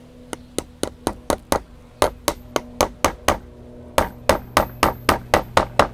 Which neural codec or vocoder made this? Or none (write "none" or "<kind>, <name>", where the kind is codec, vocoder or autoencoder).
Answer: none